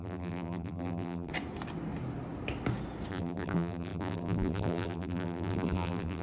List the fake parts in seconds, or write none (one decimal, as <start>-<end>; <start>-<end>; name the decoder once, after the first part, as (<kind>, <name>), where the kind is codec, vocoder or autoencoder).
0.0-1.3 (vocoder, BigVGAN v2); 3.1-6.2